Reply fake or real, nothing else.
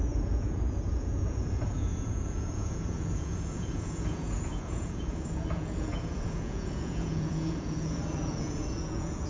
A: fake